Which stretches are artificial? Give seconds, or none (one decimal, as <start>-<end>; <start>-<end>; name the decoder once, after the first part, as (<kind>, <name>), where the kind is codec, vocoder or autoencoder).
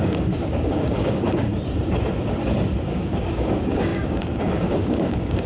0.0-1.5 (codec, DAC); 2.8-5.5